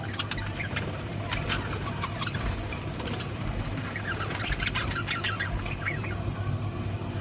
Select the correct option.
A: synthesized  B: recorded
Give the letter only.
A